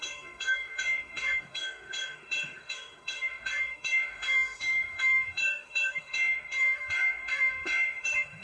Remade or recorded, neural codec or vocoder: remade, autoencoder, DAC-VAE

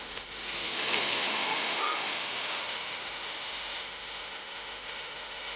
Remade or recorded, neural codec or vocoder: remade, autoencoder, DAC-VAE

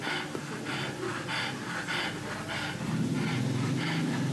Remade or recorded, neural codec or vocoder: recorded